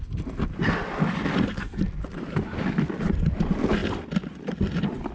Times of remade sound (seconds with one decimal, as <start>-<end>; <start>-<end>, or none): none